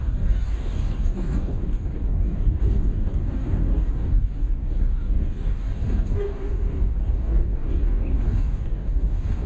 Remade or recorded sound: remade